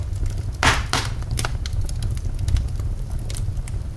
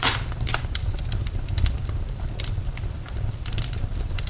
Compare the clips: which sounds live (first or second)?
first